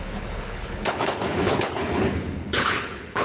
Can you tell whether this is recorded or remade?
remade